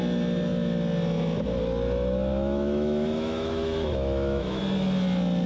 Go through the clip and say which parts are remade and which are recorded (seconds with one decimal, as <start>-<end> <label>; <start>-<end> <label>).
0.0-2.3 recorded; 2.3-4.6 remade; 4.6-5.5 recorded